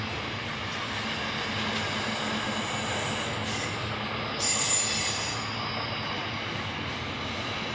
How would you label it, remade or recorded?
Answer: recorded